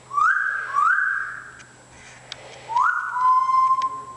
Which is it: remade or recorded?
recorded